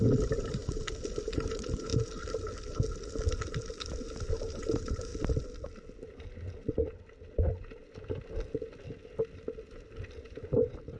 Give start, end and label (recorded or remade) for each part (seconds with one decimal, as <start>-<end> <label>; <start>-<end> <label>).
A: 0.0-0.6 remade; 0.6-1.2 recorded; 1.2-1.9 remade; 1.9-4.4 recorded; 4.4-5.1 remade; 5.1-10.1 recorded; 10.1-11.0 remade